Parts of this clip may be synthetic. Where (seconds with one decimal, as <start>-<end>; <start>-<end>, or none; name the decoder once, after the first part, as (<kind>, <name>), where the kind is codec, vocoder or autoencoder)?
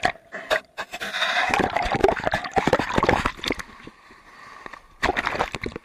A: 2.0-3.8 (vocoder, BigVGAN v2); 5.1-5.8